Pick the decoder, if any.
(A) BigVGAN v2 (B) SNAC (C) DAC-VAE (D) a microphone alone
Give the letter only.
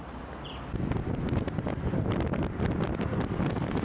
D